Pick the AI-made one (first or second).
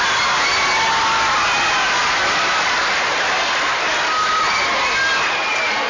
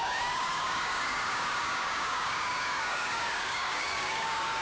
second